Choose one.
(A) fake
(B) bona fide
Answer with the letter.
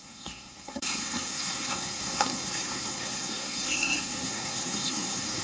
A